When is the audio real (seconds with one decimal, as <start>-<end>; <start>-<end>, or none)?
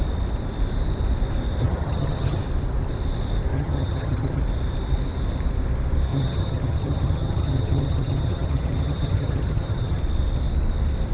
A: 0.0-1.6; 2.4-3.5; 4.4-6.1; 10.0-11.1